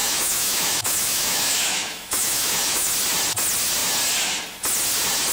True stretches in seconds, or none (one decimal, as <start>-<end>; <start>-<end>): 2.9-5.3